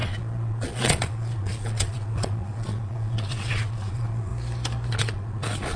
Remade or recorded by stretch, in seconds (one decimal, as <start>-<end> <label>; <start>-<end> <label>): 0.0-4.3 remade; 4.3-4.9 recorded; 4.9-5.8 remade